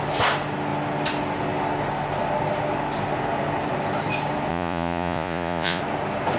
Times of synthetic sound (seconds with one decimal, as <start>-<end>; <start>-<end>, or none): 4.5-5.8